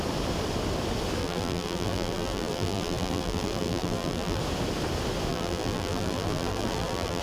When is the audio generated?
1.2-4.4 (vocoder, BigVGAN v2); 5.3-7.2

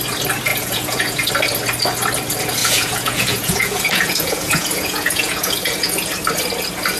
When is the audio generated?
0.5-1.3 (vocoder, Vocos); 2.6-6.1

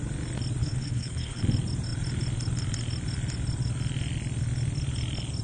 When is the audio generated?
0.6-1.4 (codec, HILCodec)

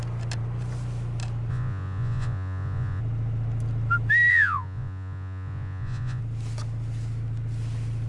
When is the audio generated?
1.5-3.0 (vocoder, Vocos); 4.3-6.2

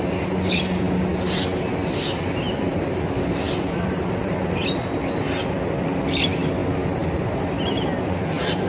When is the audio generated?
none